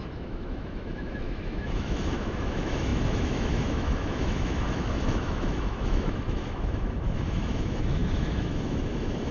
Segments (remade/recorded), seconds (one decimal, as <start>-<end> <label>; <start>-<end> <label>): 0.0-9.3 remade